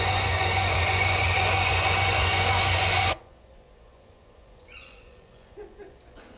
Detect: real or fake fake